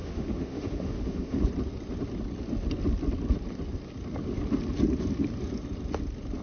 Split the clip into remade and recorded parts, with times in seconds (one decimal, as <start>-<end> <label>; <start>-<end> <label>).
0.0-1.4 remade; 1.4-6.4 recorded